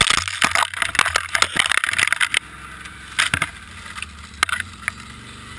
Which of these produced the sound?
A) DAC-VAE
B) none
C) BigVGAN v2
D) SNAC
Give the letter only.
B